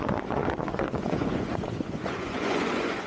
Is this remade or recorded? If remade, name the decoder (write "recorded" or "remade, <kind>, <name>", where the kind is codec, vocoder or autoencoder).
remade, vocoder, Vocos